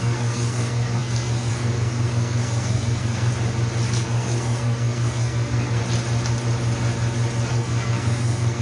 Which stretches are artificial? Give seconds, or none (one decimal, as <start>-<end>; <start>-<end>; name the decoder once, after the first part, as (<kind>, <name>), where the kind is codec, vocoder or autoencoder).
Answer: 0.0-3.3 (codec, SNAC); 3.9-5.8; 7.5-8.6